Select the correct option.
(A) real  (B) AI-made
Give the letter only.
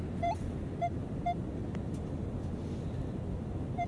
A